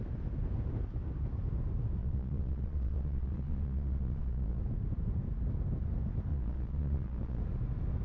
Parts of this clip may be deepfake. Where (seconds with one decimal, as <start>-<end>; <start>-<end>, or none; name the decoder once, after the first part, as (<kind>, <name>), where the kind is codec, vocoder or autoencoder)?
2.0-4.6 (vocoder, Vocos); 6.3-7.4